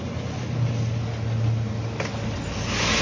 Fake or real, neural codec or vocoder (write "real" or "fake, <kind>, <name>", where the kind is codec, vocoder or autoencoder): real